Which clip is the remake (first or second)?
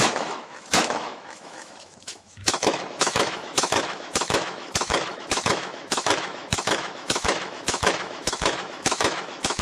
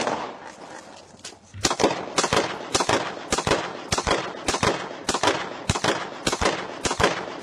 first